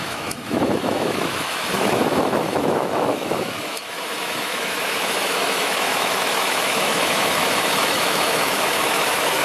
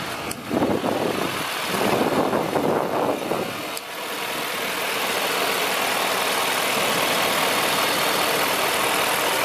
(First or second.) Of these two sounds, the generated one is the first